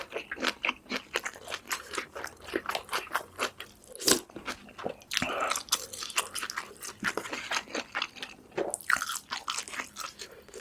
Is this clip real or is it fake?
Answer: real